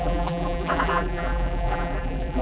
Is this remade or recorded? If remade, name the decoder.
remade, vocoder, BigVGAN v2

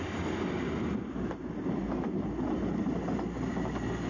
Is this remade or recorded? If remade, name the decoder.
recorded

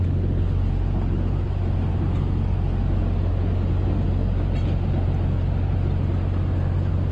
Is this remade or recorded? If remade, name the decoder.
recorded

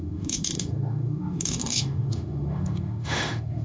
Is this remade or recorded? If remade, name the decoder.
remade, autoencoder, DAC-VAE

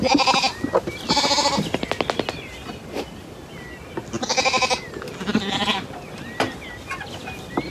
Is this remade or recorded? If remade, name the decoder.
recorded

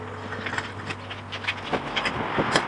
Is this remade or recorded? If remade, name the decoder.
recorded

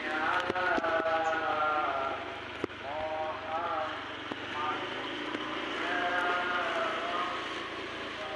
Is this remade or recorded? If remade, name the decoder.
recorded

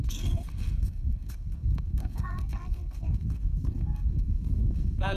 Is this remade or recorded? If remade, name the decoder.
remade, codec, SNAC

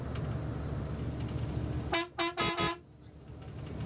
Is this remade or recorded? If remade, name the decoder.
recorded